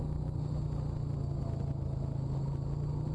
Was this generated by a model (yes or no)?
no